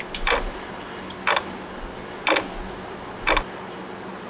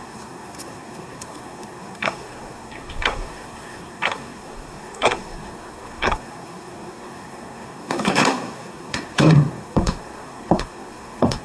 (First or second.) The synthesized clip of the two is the second